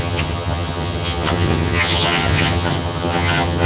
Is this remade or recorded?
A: remade